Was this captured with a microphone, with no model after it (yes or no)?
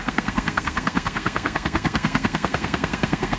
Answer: no